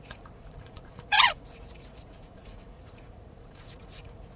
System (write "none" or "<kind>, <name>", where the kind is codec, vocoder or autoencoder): vocoder, Vocos